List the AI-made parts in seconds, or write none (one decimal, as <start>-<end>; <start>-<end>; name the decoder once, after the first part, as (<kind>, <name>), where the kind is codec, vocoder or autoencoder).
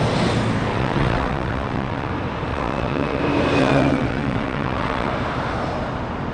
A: 0.7-2.1 (vocoder, WaveNeXt); 2.5-3.2; 3.6-5.1